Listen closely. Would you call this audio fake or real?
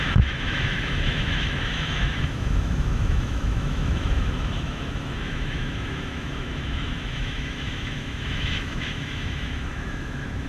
fake